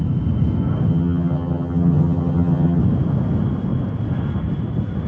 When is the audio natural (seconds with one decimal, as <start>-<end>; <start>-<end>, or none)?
0.0-0.9; 2.8-5.1